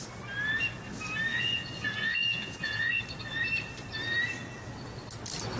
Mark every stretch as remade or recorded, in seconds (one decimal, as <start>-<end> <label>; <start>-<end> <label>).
0.0-1.3 recorded; 1.3-3.0 remade; 3.0-5.6 recorded